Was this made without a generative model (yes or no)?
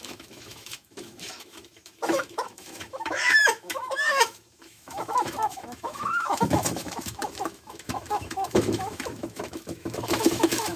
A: no